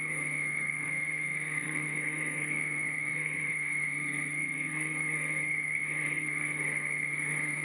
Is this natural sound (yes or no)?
no